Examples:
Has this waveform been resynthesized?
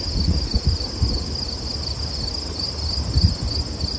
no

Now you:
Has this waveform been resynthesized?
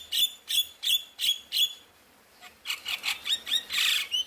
yes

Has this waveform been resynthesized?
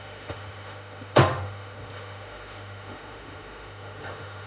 yes